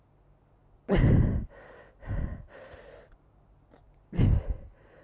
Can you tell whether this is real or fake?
real